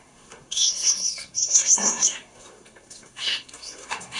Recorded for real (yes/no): no